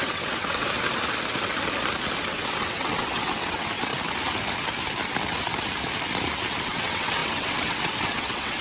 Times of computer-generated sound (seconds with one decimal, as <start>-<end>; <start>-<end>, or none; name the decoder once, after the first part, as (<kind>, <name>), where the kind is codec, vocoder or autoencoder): 0.0-0.6 (vocoder, WaveNeXt); 2.2-3.9; 6.6-8.6